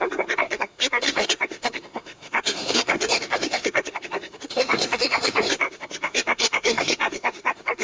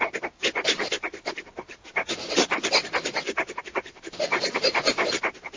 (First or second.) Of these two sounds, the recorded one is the second